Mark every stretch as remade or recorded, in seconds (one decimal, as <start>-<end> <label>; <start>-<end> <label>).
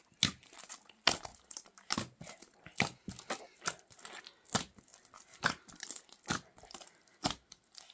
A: 0.0-7.9 recorded